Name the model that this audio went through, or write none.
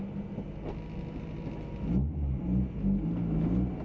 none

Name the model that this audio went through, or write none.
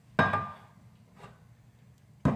none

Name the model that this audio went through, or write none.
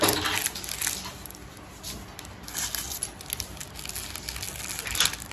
none